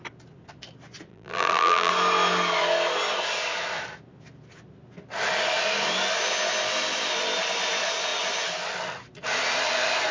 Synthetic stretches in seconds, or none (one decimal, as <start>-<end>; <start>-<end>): 1.1-1.9